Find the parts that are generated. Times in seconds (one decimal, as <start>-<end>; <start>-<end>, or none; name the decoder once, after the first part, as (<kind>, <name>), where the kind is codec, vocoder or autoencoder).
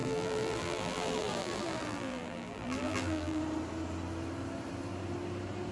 0.0-3.4 (vocoder, BigVGAN v2)